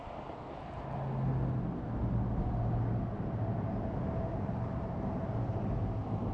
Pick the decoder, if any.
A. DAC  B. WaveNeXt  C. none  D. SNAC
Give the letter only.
C